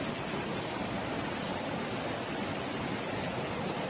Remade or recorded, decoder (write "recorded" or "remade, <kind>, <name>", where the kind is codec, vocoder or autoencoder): recorded